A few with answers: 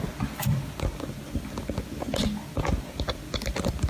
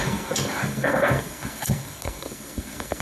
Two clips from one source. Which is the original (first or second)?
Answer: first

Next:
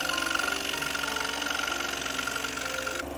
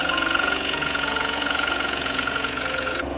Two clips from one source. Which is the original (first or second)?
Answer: first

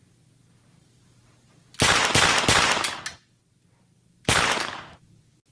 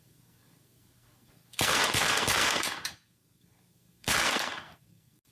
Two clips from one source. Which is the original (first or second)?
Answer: first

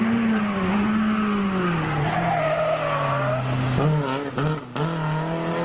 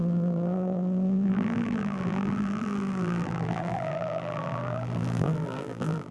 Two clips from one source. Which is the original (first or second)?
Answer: first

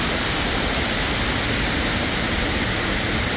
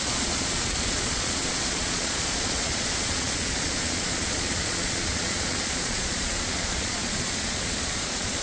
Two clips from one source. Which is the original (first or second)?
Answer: first